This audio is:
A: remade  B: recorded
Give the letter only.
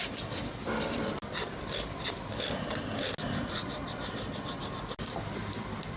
B